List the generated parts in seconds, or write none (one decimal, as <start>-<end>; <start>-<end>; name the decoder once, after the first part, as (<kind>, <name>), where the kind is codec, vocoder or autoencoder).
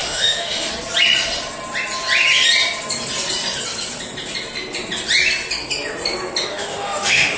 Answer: 0.0-0.7 (autoencoder, DAC-VAE); 6.5-7.4